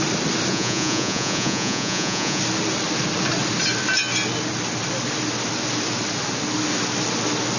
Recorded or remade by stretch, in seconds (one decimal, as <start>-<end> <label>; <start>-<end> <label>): 0.0-0.5 recorded; 0.5-2.4 remade; 2.4-7.6 recorded